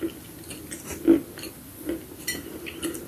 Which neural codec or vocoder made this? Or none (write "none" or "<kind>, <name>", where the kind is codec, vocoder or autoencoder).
none